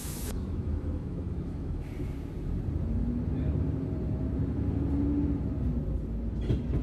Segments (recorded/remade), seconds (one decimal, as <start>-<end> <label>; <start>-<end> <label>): 0.0-1.9 remade; 1.9-6.8 recorded